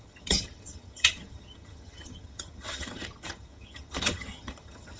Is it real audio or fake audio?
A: fake